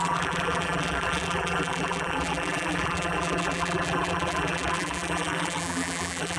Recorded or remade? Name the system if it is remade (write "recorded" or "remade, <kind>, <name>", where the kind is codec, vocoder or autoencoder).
remade, vocoder, BigVGAN v2